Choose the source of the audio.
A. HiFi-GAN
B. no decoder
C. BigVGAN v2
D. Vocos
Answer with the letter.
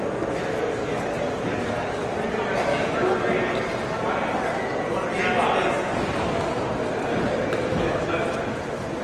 B